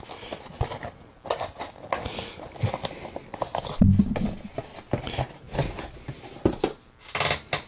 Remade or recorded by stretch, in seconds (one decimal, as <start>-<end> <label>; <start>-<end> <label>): 0.0-7.7 recorded